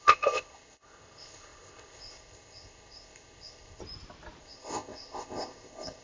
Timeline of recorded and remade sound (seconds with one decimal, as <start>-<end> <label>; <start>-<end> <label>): 0.0-3.8 remade; 3.8-4.4 recorded; 4.4-6.0 remade